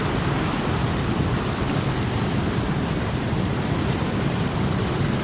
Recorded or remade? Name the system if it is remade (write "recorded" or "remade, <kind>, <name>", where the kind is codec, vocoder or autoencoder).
remade, vocoder, BigVGAN v2